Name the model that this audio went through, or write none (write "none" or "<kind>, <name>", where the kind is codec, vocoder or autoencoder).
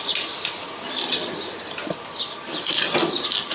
none